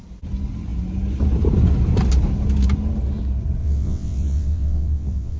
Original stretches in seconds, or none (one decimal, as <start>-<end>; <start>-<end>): 0.0-3.6